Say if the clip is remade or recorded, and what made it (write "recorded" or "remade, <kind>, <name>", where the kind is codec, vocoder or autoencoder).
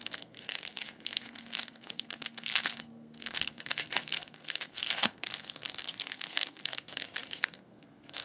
remade, codec, SNAC